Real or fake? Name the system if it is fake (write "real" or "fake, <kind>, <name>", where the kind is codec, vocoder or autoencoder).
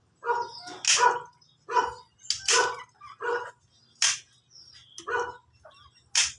real